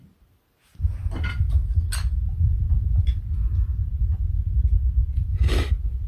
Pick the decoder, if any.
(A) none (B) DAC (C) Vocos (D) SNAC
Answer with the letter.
A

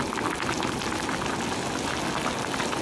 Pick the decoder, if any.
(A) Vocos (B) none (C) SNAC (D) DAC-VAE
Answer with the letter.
B